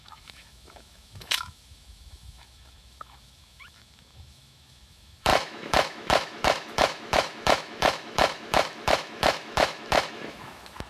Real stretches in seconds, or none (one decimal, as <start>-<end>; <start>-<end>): none